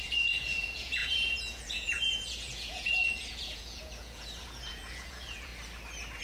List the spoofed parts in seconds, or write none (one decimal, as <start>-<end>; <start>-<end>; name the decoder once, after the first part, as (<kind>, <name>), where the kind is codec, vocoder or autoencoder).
0.0-5.5 (vocoder, Vocos)